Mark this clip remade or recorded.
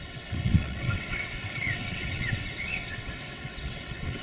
remade